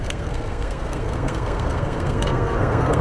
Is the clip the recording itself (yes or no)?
no